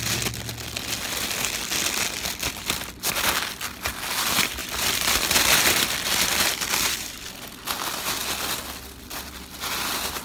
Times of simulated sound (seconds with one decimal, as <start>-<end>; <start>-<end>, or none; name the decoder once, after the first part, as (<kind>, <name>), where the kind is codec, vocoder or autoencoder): 4.6-7.3 (vocoder, BigVGAN v2)